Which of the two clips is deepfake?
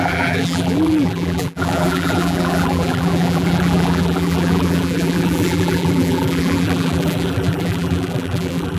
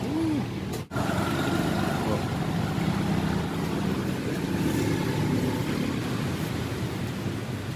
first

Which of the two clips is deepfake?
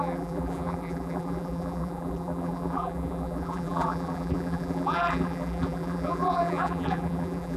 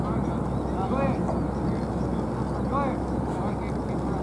first